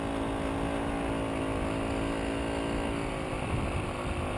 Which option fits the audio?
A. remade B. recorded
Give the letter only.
B